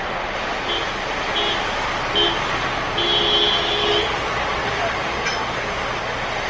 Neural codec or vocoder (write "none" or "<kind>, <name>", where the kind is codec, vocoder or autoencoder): none